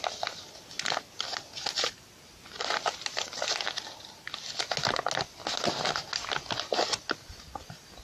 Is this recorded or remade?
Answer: recorded